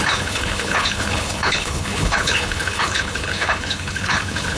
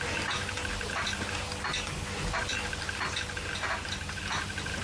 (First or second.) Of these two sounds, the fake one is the first